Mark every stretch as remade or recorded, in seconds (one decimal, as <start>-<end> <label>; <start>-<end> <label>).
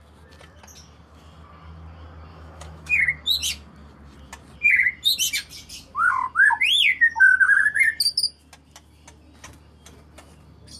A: 0.0-2.3 recorded; 2.3-3.0 remade; 3.0-10.8 recorded